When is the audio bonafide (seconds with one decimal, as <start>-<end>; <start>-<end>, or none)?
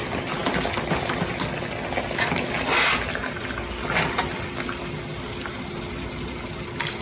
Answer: 0.0-7.0